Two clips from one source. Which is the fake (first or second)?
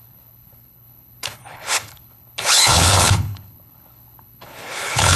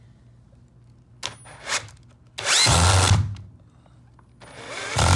first